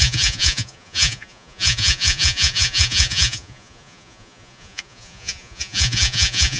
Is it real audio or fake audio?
fake